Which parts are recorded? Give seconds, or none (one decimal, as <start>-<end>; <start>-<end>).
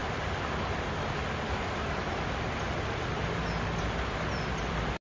0.0-5.0